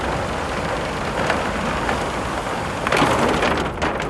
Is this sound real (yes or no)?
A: yes